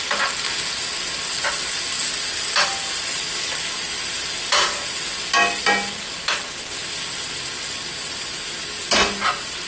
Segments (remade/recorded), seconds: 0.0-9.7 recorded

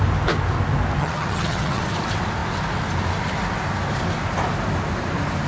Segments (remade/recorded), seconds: 0.0-1.0 recorded; 1.0-1.8 remade; 1.8-5.5 recorded